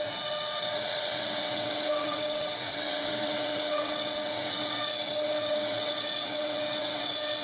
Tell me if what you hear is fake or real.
fake